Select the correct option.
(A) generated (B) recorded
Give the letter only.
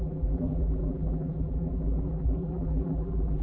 A